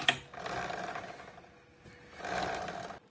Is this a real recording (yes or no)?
yes